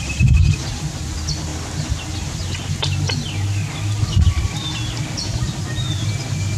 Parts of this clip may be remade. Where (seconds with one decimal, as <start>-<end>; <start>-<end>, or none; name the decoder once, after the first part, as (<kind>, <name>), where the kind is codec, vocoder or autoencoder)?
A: none